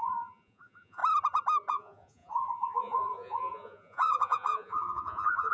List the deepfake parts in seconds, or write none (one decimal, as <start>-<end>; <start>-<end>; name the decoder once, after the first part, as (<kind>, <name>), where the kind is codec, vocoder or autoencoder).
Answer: 0.0-1.0 (vocoder, Vocos); 1.7-5.5